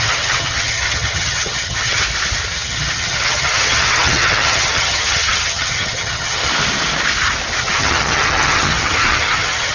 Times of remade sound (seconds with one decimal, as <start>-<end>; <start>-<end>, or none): 0.0-2.0; 2.5-6.5; 7.6-9.7